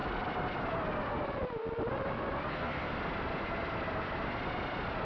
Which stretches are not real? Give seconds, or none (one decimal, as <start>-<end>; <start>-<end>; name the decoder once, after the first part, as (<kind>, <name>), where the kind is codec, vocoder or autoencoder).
2.5-3.0 (codec, SNAC)